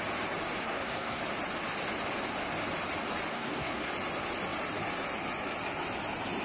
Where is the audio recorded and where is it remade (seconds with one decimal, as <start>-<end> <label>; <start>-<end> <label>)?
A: 0.0-0.6 recorded; 0.6-1.2 remade; 1.2-3.3 recorded; 3.3-3.9 remade; 3.9-6.4 recorded